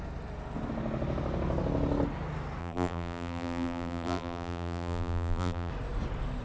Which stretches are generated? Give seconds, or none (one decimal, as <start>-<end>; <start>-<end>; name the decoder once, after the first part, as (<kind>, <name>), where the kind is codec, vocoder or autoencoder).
2.6-5.7 (vocoder, BigVGAN v2)